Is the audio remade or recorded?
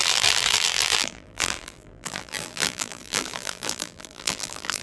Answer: remade